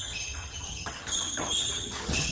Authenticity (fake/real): fake